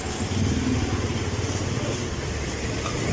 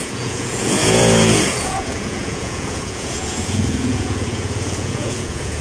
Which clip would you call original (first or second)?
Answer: first